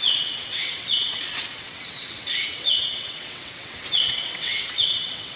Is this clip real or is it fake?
fake